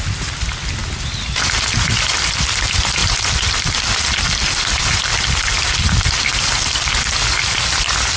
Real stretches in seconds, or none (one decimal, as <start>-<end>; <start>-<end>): 0.0-8.2